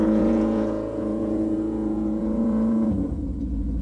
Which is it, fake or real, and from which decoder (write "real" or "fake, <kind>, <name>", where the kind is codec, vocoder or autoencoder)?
fake, vocoder, Vocos